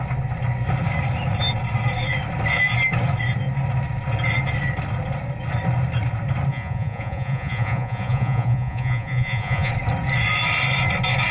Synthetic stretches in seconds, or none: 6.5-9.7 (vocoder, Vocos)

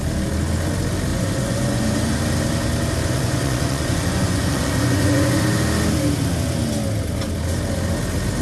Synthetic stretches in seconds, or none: 1.1-2.2 (vocoder, Vocos); 3.0-5.4